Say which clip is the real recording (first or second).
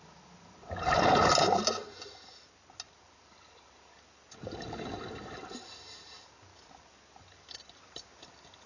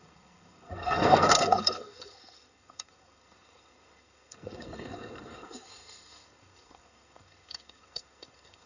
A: first